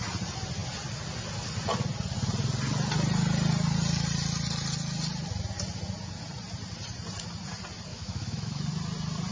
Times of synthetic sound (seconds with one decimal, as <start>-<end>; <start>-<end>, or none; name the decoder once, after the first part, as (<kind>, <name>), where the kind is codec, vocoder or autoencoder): 7.9-8.7 (autoencoder, DAC-VAE)